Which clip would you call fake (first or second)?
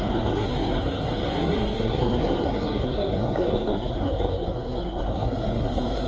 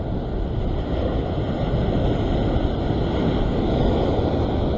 first